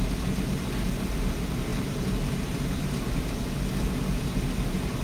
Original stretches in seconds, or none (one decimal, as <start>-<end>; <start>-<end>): 0.0-1.7; 2.9-5.0